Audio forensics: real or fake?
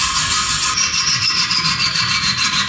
fake